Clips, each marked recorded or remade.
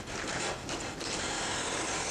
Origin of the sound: recorded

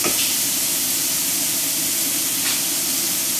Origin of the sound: recorded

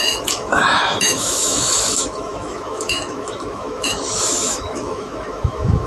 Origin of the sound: remade